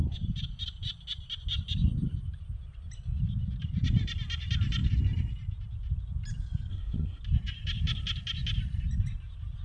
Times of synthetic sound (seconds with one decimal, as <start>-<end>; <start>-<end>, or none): 6.7-7.2